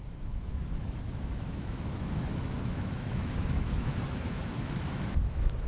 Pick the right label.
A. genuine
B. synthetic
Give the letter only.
B